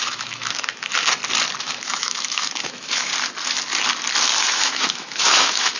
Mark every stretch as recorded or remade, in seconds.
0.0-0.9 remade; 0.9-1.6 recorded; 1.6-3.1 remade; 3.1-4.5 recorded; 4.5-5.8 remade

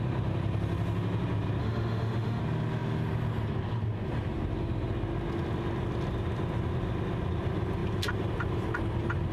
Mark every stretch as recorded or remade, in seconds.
0.0-1.6 recorded; 1.6-2.4 remade; 2.4-9.3 recorded

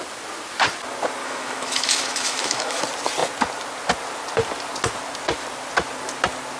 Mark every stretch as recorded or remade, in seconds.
0.0-1.2 recorded; 1.2-2.8 remade; 2.8-6.6 recorded